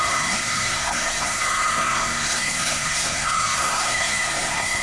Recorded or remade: remade